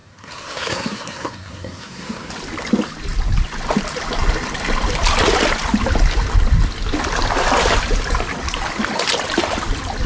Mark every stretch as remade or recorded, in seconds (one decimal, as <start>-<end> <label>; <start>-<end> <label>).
0.0-2.3 remade; 2.3-10.1 recorded